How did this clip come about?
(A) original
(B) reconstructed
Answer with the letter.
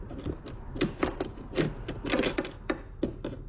A